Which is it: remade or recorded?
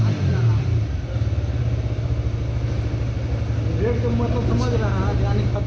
recorded